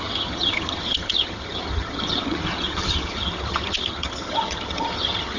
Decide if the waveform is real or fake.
fake